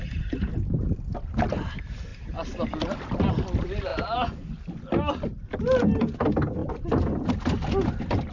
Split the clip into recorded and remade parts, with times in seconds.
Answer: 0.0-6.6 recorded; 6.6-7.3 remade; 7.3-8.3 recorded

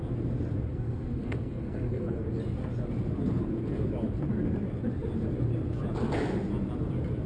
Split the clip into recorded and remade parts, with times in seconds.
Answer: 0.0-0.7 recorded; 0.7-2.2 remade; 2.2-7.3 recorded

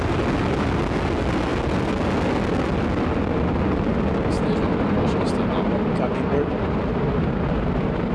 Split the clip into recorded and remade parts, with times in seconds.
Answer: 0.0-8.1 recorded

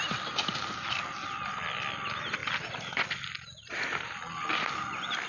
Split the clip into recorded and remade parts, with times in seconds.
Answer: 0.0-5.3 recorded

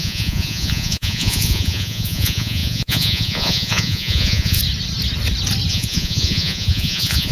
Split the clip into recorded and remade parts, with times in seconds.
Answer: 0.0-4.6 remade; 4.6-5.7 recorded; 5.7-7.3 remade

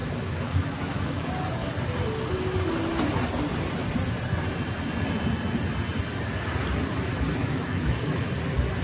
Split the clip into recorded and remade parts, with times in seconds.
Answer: 0.0-1.3 remade; 1.3-7.4 recorded; 7.4-8.3 remade; 8.3-8.8 recorded

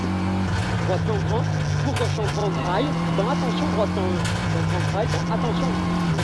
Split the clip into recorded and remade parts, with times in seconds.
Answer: 0.0-6.2 recorded